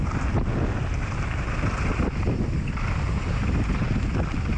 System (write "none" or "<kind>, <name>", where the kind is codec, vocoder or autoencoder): none